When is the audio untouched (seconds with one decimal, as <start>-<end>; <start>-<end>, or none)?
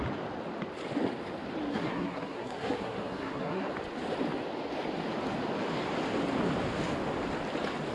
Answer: 0.0-1.7; 3.7-7.9